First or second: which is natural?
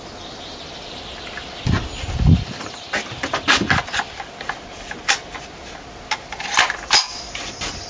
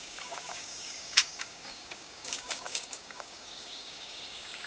first